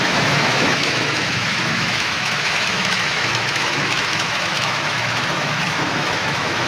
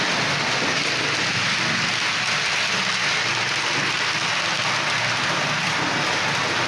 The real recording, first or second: second